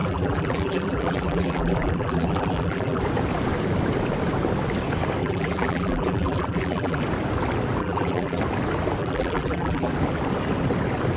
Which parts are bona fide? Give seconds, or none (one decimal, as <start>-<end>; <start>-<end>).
3.0-5.2; 7.0-7.8; 8.4-9.0; 9.9-11.2